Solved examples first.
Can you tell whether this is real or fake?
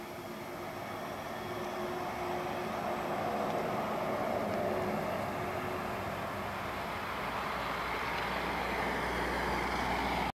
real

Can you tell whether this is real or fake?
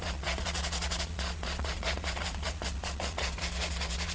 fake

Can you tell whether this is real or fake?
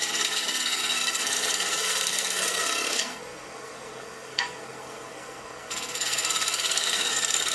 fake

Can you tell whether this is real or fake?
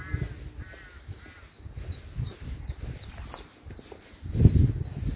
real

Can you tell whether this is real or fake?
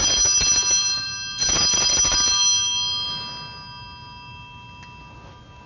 real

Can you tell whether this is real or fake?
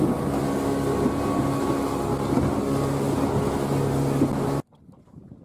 real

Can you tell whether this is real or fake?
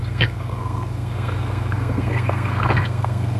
fake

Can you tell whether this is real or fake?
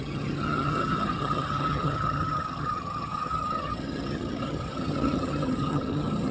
fake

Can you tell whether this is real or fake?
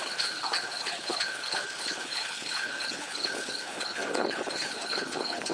fake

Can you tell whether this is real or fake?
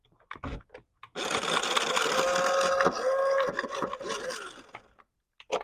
real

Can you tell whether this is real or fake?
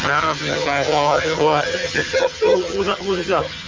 fake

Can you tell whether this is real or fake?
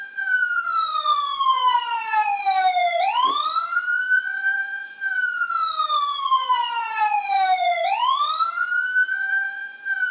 fake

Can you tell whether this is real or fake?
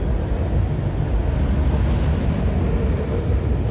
real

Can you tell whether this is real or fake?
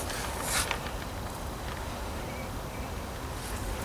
real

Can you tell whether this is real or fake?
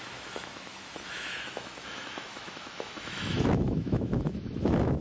fake